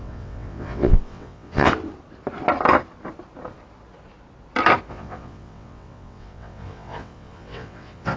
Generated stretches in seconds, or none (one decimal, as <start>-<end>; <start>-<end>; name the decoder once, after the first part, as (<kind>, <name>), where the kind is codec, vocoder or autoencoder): 0.0-1.7 (vocoder, WaveNeXt); 4.9-8.2